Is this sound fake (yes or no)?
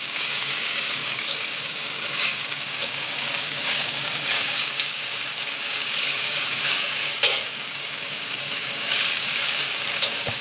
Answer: yes